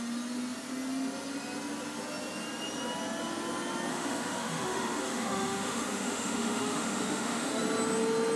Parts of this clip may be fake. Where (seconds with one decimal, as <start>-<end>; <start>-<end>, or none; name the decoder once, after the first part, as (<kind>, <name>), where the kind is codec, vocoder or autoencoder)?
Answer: 3.9-7.6 (autoencoder, DAC-VAE)